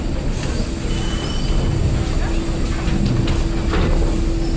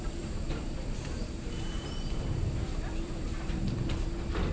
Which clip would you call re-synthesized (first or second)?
second